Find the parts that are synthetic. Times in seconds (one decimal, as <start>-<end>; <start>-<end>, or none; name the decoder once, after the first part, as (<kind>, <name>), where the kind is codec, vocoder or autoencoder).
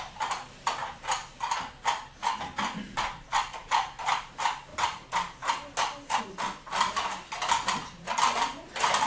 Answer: none